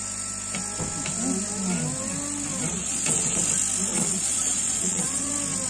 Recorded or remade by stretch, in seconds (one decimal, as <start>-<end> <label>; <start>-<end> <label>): 0.0-2.7 recorded; 2.7-3.4 remade; 3.4-3.9 recorded; 3.9-5.3 remade; 5.3-5.7 recorded